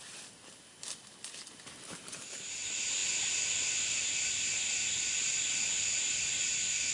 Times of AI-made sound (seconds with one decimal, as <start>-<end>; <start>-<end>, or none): none